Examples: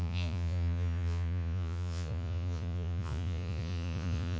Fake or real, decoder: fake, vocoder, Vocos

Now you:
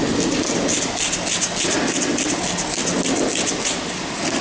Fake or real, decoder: real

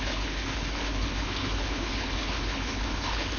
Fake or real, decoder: fake, codec, HILCodec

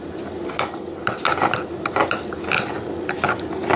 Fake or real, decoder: real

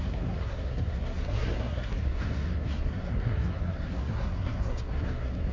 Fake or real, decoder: fake, codec, SNAC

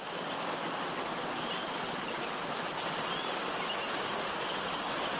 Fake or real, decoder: real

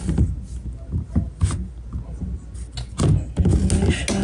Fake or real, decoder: real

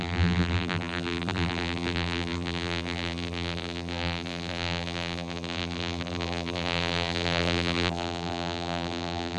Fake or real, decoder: fake, vocoder, BigVGAN v2